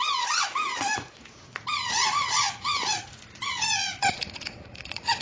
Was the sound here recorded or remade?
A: remade